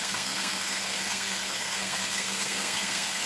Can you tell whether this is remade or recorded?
remade